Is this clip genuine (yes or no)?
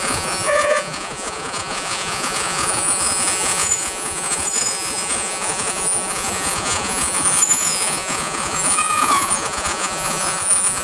no